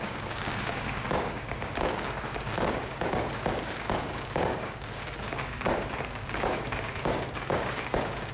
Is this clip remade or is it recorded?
remade